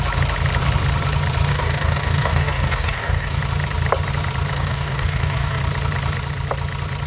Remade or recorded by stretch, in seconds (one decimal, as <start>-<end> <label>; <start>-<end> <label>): 0.0-1.5 recorded; 1.5-3.4 remade; 3.4-4.5 recorded; 4.5-5.6 remade; 5.6-7.1 recorded